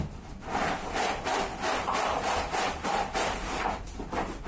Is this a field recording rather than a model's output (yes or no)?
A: yes